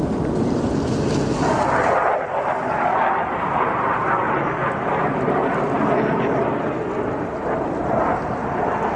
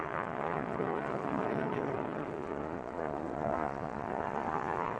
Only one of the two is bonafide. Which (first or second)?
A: first